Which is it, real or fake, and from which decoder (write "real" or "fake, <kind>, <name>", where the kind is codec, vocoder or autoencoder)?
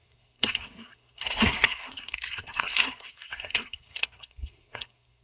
fake, codec, SNAC